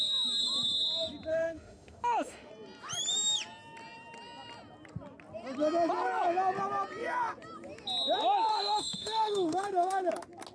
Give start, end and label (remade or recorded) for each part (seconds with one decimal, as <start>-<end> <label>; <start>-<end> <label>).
0.0-1.3 recorded; 1.3-2.5 remade; 2.5-8.5 recorded; 8.5-10.1 remade; 10.1-10.5 recorded